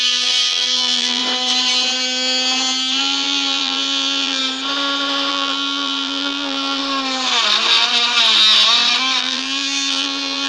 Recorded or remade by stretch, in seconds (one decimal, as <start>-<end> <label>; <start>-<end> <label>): 0.0-1.2 remade; 1.2-3.0 recorded; 3.0-4.4 remade; 4.4-5.3 recorded; 5.3-6.8 remade; 6.8-9.2 recorded; 9.2-10.5 remade